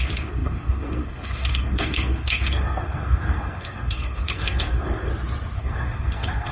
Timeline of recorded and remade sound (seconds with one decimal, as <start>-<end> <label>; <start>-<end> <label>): 0.0-5.1 remade; 5.1-5.6 recorded; 5.6-6.5 remade